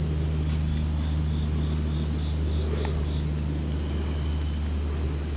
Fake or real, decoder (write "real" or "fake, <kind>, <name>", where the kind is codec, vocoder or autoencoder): real